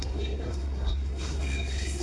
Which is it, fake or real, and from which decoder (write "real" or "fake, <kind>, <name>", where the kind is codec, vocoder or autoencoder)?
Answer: fake, codec, SNAC